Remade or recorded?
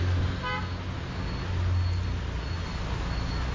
recorded